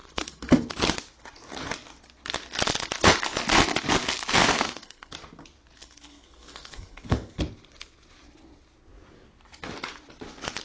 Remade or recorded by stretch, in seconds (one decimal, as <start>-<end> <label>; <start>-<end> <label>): 0.0-0.7 remade; 0.7-4.4 recorded; 4.4-5.1 remade; 5.1-5.8 recorded; 5.8-7.4 remade; 7.4-10.6 recorded